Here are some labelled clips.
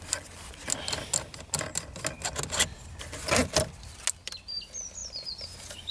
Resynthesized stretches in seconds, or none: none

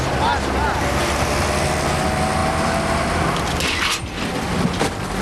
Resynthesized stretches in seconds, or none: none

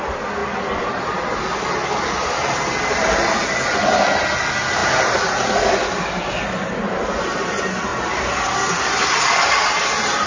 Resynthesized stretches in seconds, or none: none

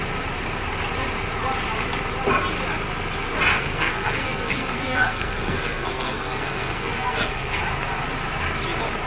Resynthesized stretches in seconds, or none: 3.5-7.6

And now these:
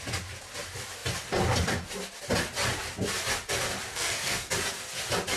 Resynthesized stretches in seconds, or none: 3.9-4.5